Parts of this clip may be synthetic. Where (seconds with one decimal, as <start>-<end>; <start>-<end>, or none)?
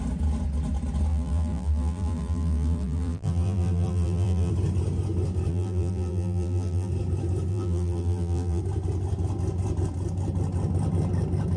1.1-4.5; 5.5-6.9; 7.5-8.6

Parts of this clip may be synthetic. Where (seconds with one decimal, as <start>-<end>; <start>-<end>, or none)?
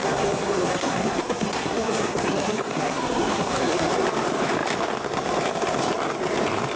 0.0-3.9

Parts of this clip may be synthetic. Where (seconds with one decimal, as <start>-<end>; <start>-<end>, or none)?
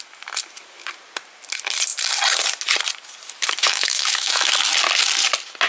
3.6-4.5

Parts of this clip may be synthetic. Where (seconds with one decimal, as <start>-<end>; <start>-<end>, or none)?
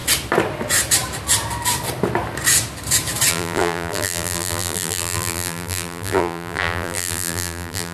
3.3-7.9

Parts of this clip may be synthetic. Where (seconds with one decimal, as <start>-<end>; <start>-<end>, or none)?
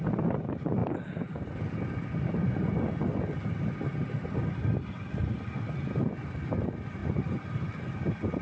none